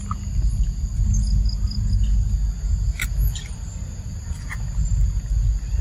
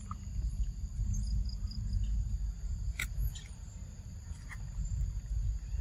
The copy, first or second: second